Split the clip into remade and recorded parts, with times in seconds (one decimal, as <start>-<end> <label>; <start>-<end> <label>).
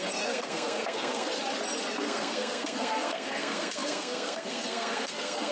0.0-1.3 remade; 1.3-1.9 recorded; 1.9-5.5 remade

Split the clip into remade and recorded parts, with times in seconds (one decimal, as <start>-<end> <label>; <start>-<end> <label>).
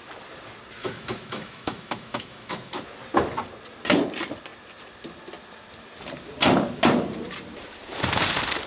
0.0-0.8 recorded; 0.8-2.7 remade; 2.7-8.7 recorded